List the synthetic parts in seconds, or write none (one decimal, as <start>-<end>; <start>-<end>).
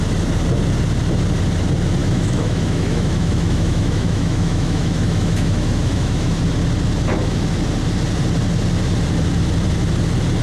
2.0-6.4